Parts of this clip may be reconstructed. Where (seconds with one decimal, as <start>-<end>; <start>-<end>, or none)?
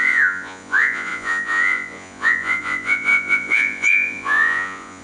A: 0.0-5.0